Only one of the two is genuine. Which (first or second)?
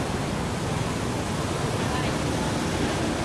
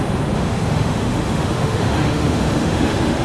first